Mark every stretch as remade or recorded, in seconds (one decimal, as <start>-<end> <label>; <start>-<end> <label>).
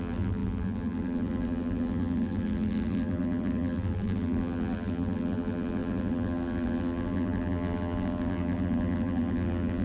0.0-9.8 remade